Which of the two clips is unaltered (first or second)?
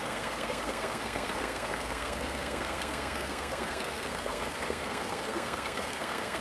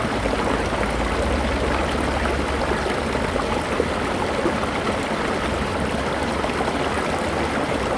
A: second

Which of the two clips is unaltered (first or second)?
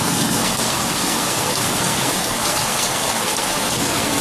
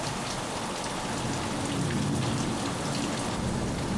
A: second